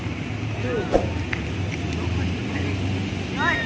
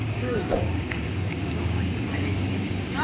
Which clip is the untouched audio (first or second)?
first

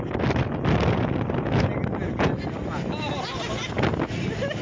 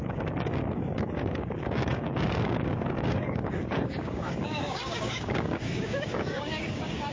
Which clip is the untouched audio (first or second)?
first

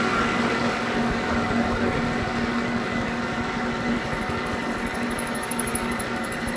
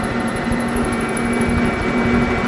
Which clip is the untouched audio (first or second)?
second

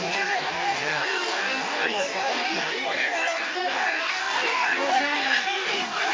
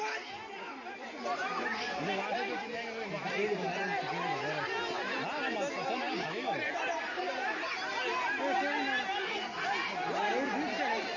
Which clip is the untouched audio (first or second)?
second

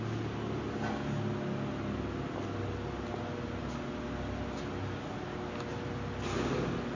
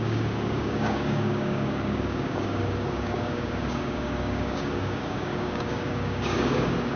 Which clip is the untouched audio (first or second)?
first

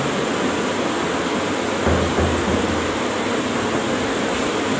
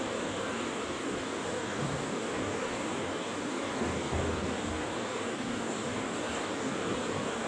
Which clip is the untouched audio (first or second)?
first